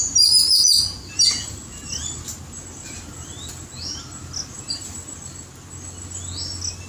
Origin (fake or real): real